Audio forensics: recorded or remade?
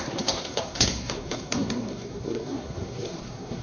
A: remade